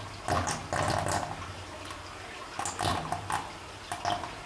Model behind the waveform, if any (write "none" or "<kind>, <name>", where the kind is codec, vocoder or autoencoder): none